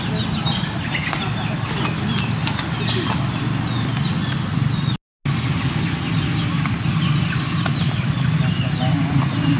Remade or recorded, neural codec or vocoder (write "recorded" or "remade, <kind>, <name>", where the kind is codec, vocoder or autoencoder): recorded